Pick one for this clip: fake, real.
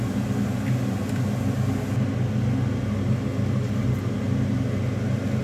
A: real